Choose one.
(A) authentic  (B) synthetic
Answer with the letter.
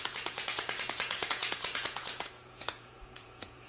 B